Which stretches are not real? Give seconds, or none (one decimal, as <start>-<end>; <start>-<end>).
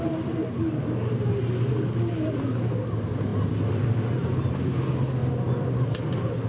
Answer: none